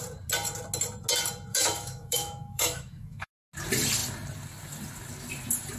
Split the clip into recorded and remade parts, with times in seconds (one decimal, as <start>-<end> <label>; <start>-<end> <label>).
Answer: 0.0-1.5 recorded; 1.5-3.3 remade; 3.3-5.8 recorded